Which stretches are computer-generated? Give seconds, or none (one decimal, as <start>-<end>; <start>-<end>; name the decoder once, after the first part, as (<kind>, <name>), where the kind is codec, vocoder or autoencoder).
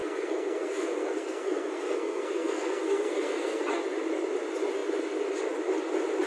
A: 0.0-3.8 (codec, SNAC)